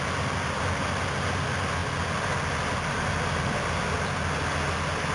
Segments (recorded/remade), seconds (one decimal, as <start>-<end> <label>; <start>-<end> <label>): 0.0-5.1 recorded